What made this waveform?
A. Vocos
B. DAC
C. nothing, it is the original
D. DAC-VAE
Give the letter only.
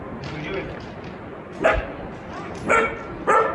C